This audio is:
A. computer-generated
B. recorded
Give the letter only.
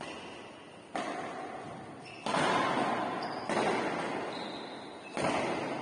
B